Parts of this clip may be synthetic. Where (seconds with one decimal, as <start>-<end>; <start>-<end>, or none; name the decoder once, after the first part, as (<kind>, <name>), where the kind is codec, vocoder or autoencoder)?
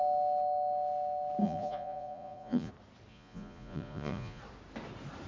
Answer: 1.4-2.7 (vocoder, Vocos); 3.1-4.4